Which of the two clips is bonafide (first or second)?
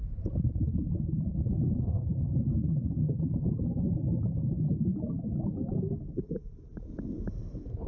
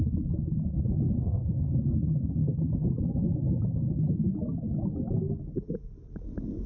second